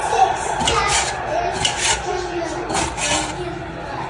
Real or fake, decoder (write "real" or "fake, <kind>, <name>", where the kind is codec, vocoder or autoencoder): real